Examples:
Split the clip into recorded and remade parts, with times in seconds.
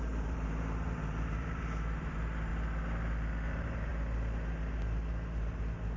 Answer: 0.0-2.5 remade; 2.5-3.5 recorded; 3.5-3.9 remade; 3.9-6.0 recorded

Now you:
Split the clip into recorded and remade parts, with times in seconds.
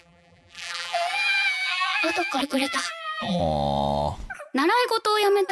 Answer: 0.0-3.4 remade; 3.4-5.5 recorded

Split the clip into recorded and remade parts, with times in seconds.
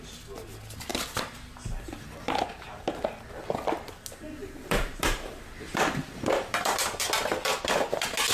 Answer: 0.0-4.4 recorded; 4.4-7.8 remade; 7.8-8.3 recorded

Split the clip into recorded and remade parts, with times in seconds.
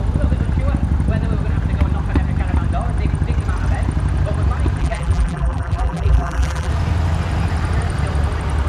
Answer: 0.0-4.8 recorded; 4.8-6.7 remade; 6.7-8.7 recorded